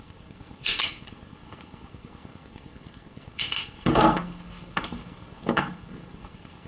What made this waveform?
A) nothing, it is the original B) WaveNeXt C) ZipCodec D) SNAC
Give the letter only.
D